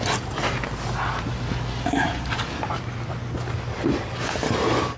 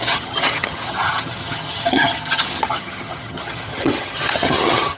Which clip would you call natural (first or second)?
first